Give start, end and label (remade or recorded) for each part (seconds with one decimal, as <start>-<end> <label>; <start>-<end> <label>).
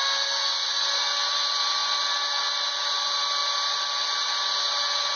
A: 0.0-5.2 recorded